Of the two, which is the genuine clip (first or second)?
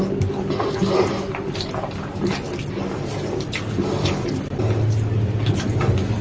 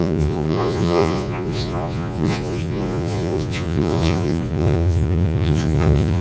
first